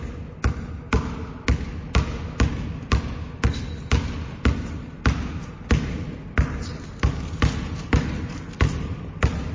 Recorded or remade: recorded